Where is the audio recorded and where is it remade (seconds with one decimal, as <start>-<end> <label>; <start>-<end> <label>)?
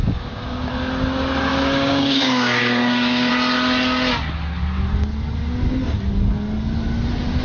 0.0-0.7 remade; 0.7-1.5 recorded; 1.5-3.3 remade; 3.3-7.4 recorded